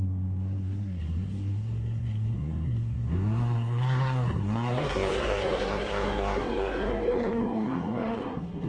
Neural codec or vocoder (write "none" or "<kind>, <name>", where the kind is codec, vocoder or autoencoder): codec, SNAC